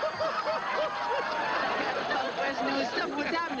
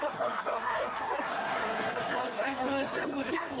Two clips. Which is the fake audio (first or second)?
second